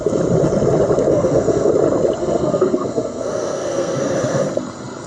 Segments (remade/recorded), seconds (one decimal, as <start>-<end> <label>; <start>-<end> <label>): 0.0-1.1 recorded; 1.1-1.7 remade; 1.7-2.2 recorded; 2.2-4.4 remade; 4.4-5.1 recorded